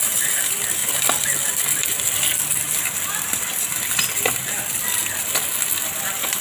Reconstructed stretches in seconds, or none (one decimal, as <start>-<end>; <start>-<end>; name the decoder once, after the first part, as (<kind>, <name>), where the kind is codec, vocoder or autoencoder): 0.0-5.0 (vocoder, BigVGAN v2); 5.8-6.4